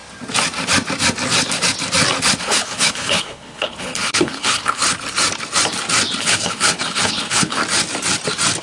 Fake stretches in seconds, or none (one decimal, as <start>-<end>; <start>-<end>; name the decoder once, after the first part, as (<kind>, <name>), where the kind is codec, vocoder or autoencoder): 2.4-4.8 (codec, HILCodec); 6.2-7.6